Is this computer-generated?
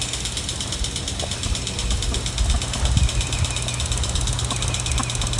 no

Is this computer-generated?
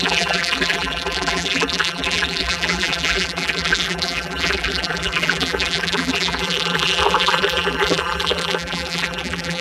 yes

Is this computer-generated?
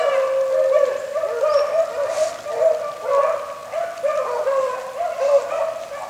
no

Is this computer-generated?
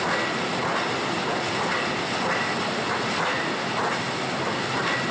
no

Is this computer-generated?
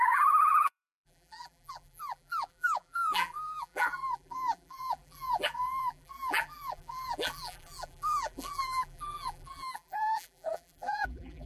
yes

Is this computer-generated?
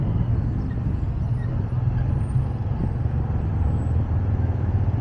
no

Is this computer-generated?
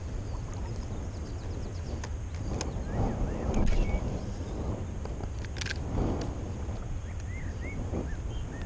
no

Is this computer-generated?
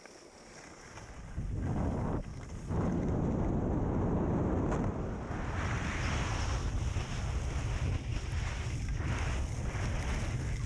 no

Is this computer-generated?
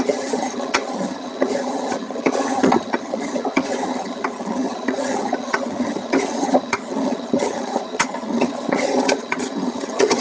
yes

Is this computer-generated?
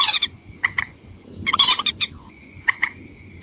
yes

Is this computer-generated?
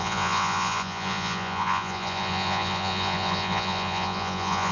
yes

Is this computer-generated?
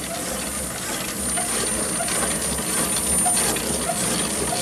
no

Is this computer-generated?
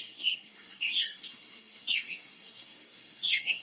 yes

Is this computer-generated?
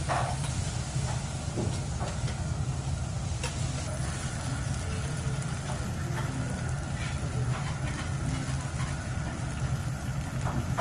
no